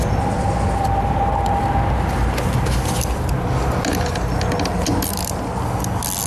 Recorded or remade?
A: recorded